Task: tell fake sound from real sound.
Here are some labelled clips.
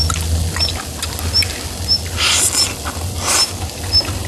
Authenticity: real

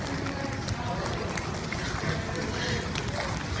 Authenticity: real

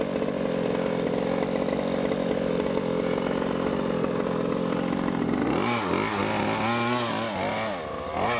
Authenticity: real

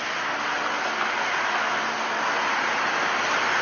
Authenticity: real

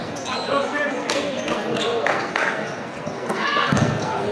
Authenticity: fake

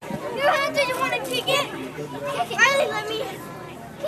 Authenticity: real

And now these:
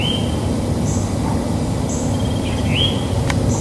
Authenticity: real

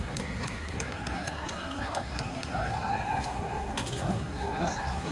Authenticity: fake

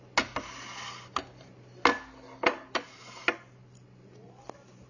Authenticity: real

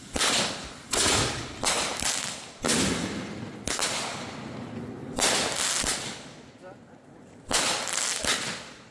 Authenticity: real